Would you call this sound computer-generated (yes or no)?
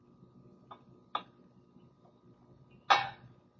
no